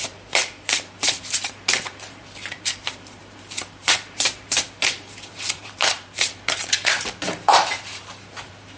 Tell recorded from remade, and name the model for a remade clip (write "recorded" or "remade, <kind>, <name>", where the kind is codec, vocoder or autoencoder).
remade, vocoder, BigVGAN v2